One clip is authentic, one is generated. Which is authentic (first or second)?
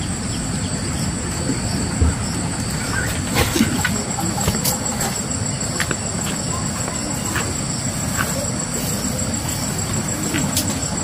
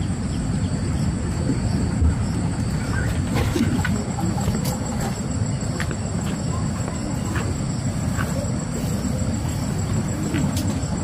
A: first